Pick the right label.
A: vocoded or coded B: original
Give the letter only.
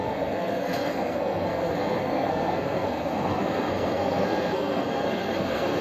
A